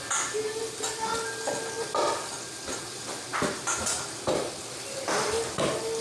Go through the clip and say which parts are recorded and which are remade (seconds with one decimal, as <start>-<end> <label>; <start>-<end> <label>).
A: 0.0-3.3 remade; 3.3-5.0 recorded; 5.0-6.0 remade

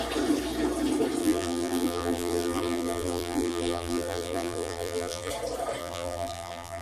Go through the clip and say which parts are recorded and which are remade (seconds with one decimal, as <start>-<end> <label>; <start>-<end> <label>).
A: 0.0-1.2 recorded; 1.2-5.3 remade; 5.3-5.8 recorded; 5.8-6.8 remade

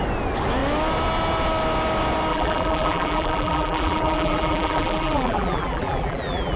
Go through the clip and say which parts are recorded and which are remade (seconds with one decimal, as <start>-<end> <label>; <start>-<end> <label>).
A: 0.0-2.3 recorded; 2.3-6.6 remade

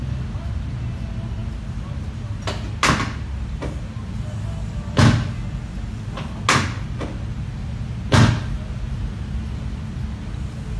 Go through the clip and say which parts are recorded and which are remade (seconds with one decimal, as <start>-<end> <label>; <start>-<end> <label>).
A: 0.0-10.8 recorded

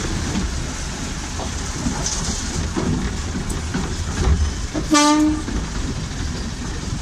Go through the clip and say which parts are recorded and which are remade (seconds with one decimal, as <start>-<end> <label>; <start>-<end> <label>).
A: 0.0-7.0 recorded